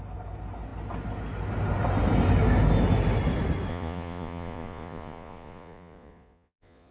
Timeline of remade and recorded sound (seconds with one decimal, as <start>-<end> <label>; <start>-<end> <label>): 0.0-3.7 recorded; 3.7-6.9 remade